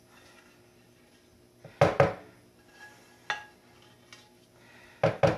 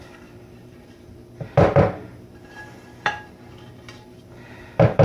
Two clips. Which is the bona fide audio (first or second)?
first